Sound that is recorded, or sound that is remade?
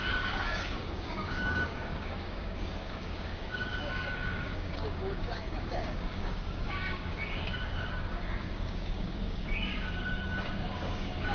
remade